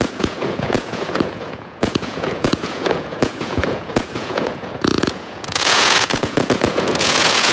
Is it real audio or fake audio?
fake